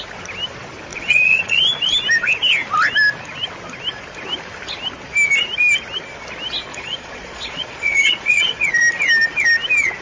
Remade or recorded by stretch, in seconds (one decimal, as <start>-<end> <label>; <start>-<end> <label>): 0.0-0.9 recorded; 0.9-1.6 remade; 1.6-6.7 recorded; 6.7-8.7 remade; 8.7-10.0 recorded